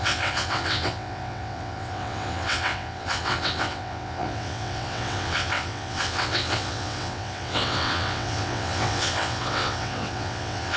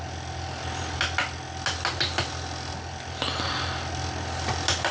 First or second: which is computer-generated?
first